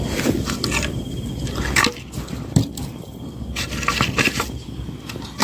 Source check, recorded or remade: recorded